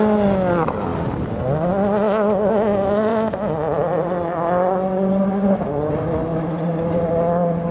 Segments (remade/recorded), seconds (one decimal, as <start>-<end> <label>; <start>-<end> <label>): 0.0-7.7 recorded